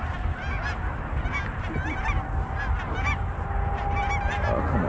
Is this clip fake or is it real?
real